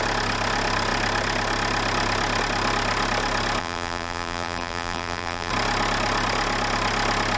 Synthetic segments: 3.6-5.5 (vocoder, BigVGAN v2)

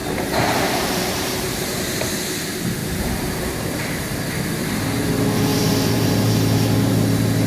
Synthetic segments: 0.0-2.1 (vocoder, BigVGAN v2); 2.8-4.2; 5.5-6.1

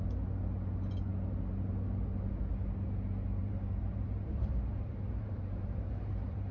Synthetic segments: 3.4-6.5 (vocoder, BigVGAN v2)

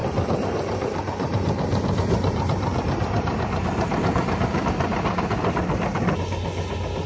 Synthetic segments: 0.0-4.1 (vocoder, BigVGAN v2)

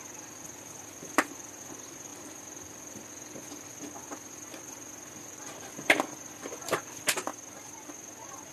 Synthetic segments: 0.0-7.3 (vocoder, BigVGAN v2)

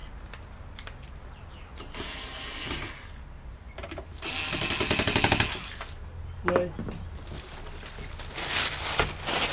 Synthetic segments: 0.0-2.5 (vocoder, BigVGAN v2); 3.5-4.3